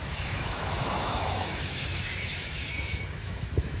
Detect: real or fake fake